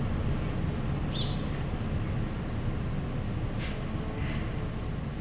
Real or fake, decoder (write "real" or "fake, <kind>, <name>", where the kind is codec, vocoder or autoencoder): real